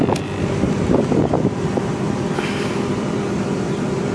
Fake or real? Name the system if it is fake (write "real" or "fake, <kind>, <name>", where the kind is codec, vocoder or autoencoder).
fake, vocoder, BigVGAN v2